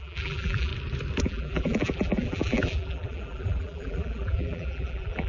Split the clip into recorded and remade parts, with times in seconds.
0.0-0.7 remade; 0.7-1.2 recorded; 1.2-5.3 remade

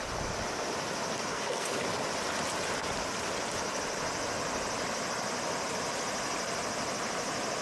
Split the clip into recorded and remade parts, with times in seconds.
0.0-1.3 recorded; 1.3-1.8 remade; 1.8-7.6 recorded

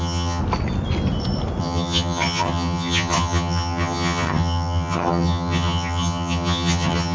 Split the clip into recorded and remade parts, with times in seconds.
0.0-0.4 remade; 0.4-1.6 recorded; 1.6-7.1 remade